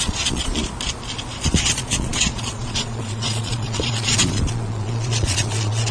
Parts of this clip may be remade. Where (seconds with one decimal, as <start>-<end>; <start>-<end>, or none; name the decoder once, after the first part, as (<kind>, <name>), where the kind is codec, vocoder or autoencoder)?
0.0-0.6 (vocoder, Vocos); 1.3-5.9